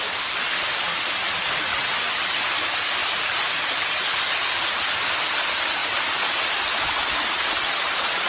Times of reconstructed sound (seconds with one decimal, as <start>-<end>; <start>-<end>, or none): 1.7-2.3; 3.0-4.3; 5.8-6.4

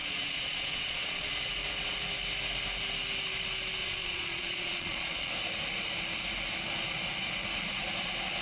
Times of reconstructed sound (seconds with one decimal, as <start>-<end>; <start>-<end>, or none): 0.0-1.3; 3.8-5.3